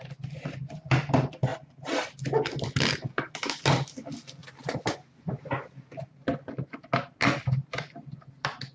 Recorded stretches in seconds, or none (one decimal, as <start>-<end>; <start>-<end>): 0.0-8.7